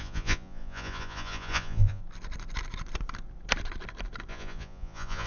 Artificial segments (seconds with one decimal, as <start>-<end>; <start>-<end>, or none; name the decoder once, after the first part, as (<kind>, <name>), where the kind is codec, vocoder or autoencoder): 0.0-2.0 (vocoder, Vocos); 4.3-5.3